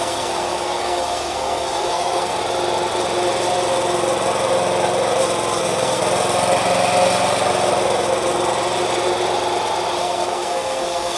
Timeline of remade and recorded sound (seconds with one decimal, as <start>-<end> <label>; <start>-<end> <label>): 0.0-2.4 remade; 2.4-5.6 recorded; 5.6-6.0 remade; 6.0-10.0 recorded; 10.0-11.2 remade